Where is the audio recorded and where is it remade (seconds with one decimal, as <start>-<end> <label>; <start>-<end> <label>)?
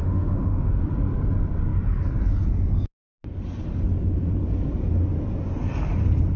0.0-0.9 remade; 0.9-6.4 recorded